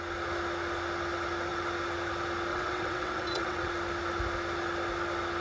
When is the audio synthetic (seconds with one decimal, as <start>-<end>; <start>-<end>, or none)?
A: 2.5-3.7